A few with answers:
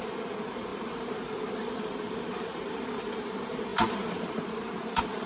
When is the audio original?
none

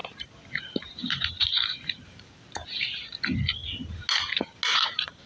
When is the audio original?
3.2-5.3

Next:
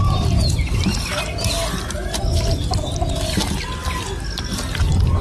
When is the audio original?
0.0-5.2